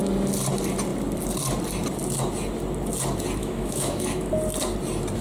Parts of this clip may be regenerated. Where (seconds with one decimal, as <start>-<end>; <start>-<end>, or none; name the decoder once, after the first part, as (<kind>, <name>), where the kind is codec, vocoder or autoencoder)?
3.4-4.3 (autoencoder, DAC-VAE)